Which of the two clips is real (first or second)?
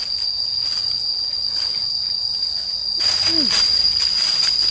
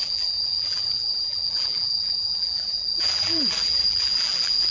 first